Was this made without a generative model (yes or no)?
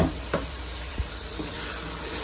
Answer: no